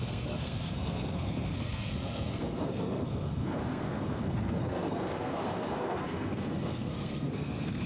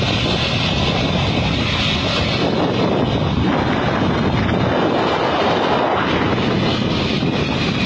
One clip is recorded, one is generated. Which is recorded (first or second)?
second